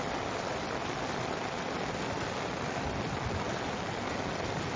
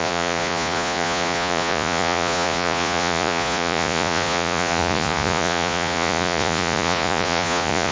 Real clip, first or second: first